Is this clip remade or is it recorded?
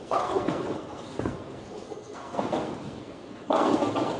remade